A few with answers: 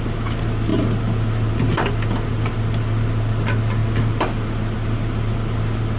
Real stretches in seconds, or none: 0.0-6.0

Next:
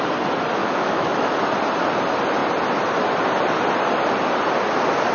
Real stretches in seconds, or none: 0.0-0.6; 1.1-5.1

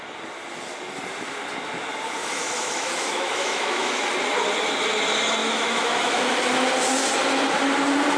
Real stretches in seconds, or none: 0.0-2.2; 3.9-5.4; 6.2-8.2